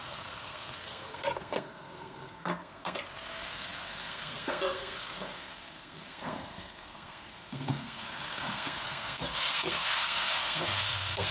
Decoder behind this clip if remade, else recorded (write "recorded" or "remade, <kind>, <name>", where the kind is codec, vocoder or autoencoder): remade, codec, SNAC